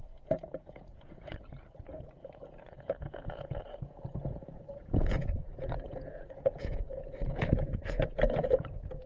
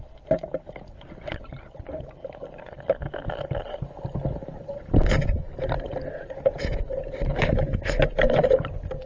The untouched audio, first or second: second